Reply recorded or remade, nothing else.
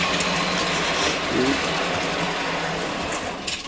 recorded